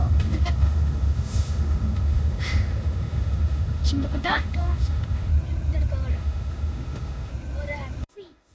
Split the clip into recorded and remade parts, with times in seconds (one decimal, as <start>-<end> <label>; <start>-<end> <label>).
0.0-5.3 remade; 5.3-6.1 recorded; 6.1-7.3 remade; 7.3-8.0 recorded; 8.0-8.5 remade